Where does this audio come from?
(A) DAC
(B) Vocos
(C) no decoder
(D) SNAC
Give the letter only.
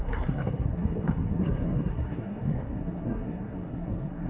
D